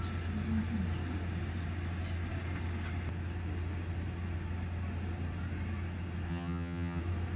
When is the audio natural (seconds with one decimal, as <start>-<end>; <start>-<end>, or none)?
0.0-6.3; 7.0-7.4